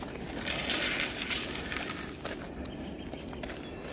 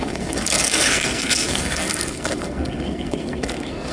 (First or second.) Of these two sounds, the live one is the first